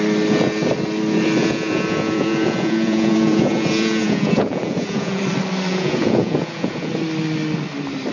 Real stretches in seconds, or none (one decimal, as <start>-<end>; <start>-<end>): 0.0-1.4; 5.2-5.7; 6.9-8.1